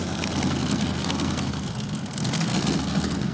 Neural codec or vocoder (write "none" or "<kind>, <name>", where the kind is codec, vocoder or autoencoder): codec, SNAC